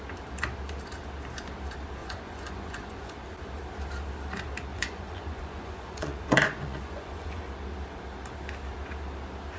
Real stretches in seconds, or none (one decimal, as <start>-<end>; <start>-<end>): 0.0-2.0; 3.1-4.7; 7.4-9.6